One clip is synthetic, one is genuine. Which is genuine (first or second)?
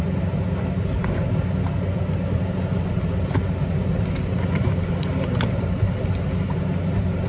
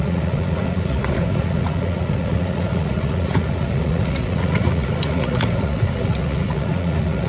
first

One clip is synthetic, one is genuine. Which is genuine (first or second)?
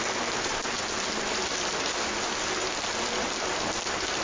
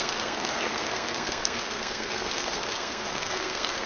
first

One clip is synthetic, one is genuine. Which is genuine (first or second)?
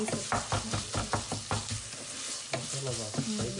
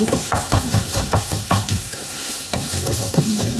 first